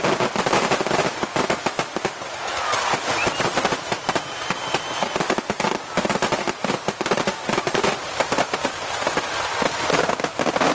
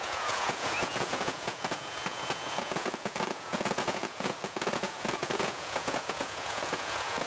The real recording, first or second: first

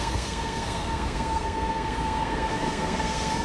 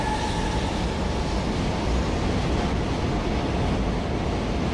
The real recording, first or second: second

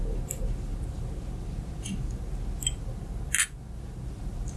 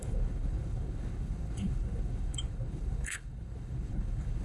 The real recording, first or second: first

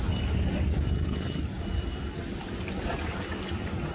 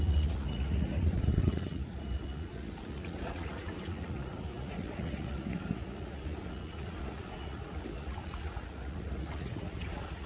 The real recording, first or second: first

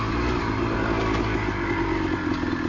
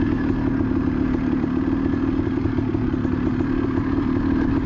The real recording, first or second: first